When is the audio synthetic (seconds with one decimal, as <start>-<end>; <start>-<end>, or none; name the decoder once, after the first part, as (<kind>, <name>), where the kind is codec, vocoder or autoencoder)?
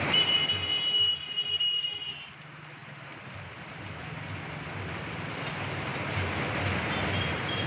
5.9-6.4 (vocoder, BigVGAN v2)